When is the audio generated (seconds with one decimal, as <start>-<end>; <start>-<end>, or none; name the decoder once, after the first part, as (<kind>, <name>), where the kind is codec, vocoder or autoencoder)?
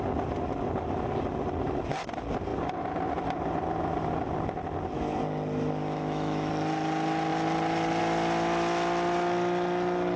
5.8-6.5 (autoencoder, DAC-VAE)